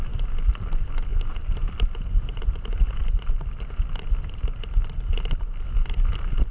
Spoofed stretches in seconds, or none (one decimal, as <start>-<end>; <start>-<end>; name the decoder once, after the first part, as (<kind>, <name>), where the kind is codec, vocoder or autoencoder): none